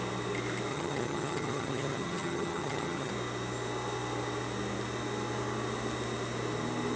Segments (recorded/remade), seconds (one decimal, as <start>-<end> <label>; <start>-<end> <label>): 0.0-0.7 recorded; 0.7-3.1 remade; 3.1-7.0 recorded